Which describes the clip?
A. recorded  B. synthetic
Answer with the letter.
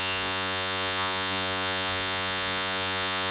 B